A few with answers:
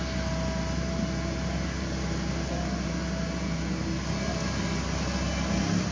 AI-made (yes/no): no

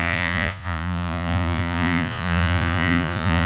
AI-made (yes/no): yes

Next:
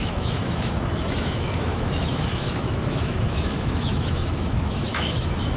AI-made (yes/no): yes